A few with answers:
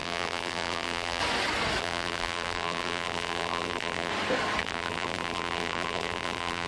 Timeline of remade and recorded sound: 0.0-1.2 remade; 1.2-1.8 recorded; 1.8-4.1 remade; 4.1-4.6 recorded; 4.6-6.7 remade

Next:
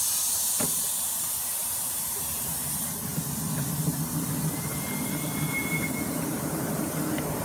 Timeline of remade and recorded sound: 0.0-1.6 recorded; 1.6-2.5 remade; 2.5-7.4 recorded

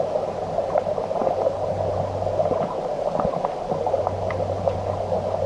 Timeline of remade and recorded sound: 0.0-5.5 recorded

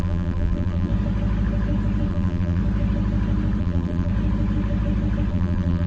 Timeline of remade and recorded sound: 0.0-0.9 remade; 0.9-2.1 recorded; 2.1-2.6 remade; 2.6-3.6 recorded; 3.6-4.1 remade; 4.1-5.3 recorded; 5.3-5.9 remade

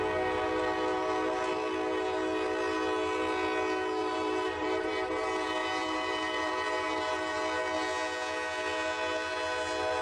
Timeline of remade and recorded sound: 0.0-4.0 recorded; 4.0-7.4 remade; 7.4-10.0 recorded

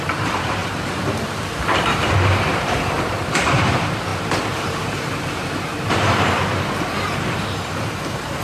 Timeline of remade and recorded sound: 0.0-0.6 remade; 0.6-2.6 recorded; 2.6-8.4 remade